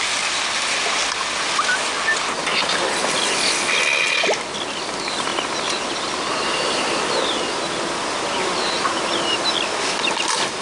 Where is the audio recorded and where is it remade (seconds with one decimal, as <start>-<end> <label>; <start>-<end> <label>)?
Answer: 0.0-10.6 recorded